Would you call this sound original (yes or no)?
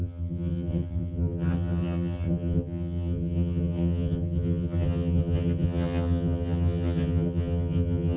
no